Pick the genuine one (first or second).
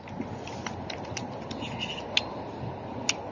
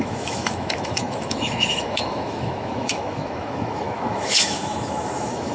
first